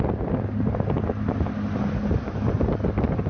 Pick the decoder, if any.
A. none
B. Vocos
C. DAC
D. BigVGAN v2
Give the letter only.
A